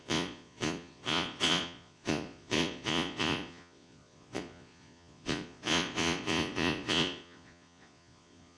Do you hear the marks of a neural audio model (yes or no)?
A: yes